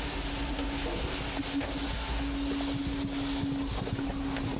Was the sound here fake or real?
real